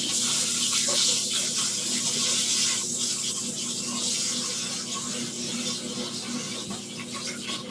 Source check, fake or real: real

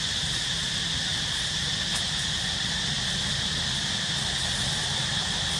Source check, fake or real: real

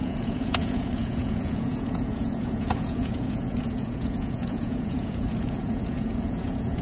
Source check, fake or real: fake